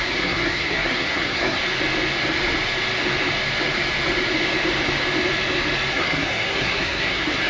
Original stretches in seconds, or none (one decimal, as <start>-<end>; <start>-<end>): 1.6-5.9